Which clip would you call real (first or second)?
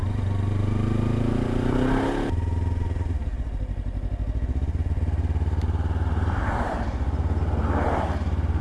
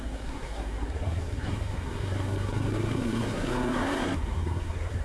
first